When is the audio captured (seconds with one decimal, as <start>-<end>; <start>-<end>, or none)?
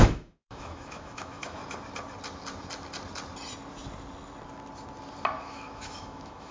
1.6-5.4